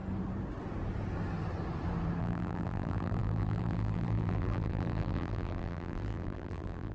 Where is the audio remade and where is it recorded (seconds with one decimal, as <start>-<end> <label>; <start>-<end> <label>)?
0.0-2.2 recorded; 2.2-6.9 remade